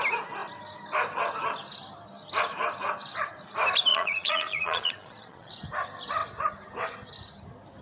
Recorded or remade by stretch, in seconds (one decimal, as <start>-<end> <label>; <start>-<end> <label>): 0.0-3.9 recorded; 3.9-5.5 remade; 5.5-7.8 recorded

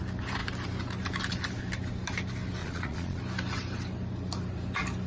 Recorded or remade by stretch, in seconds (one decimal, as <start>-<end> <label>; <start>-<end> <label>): 0.0-2.6 recorded; 2.6-3.2 remade; 3.2-5.1 recorded

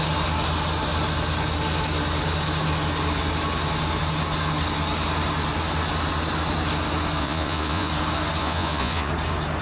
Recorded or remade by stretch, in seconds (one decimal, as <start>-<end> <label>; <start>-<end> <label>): 0.0-7.2 recorded; 7.2-7.9 remade; 7.9-8.4 recorded; 8.4-9.1 remade; 9.1-9.6 recorded